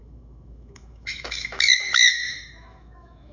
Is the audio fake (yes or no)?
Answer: yes